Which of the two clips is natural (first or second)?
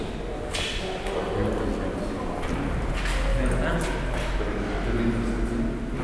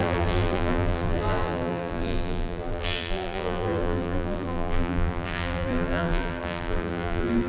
first